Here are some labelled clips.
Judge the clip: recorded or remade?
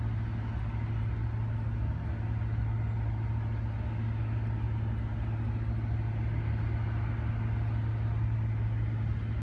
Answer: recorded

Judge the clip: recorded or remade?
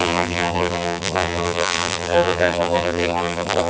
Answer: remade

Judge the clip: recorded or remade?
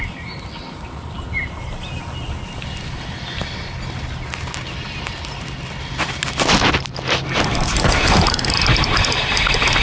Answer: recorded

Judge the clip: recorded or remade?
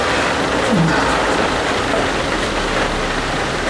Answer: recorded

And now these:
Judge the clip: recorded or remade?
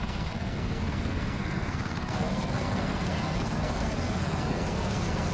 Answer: remade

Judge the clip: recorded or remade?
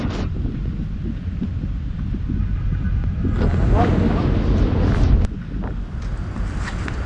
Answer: recorded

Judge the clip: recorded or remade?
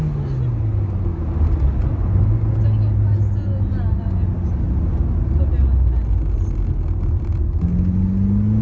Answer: recorded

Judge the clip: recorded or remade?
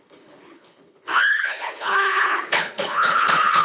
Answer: remade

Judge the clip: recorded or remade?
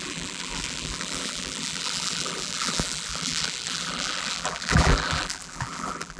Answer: remade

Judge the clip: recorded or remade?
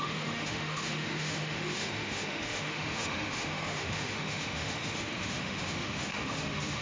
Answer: remade